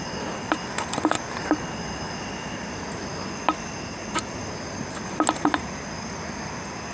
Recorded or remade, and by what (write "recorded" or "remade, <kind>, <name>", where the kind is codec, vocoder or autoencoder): recorded